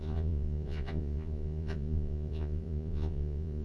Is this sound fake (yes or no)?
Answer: yes